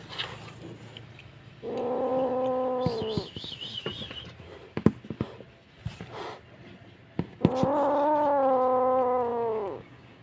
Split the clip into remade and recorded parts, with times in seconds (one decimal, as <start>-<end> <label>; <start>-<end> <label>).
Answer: 0.0-9.3 recorded; 9.3-10.2 remade